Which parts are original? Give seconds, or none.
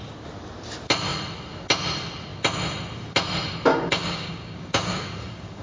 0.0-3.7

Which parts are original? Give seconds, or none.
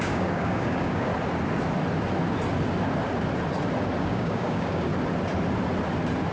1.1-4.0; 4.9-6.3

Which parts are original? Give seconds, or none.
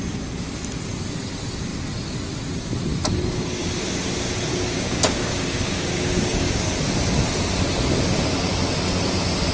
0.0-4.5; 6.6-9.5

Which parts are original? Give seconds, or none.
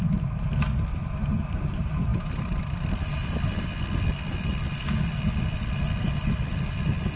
0.0-7.2